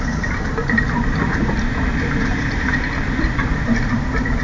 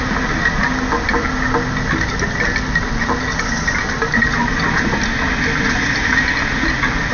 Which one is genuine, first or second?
second